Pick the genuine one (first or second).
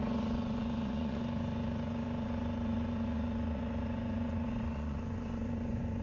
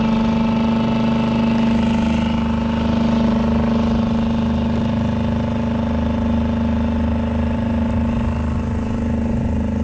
second